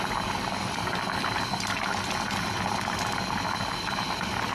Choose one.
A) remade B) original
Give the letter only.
B